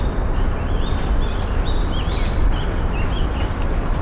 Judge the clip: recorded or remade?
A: recorded